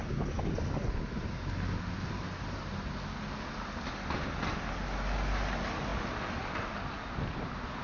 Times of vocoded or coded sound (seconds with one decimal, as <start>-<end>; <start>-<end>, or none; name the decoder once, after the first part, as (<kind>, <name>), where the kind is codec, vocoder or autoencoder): none